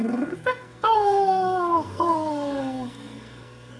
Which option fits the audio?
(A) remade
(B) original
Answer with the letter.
A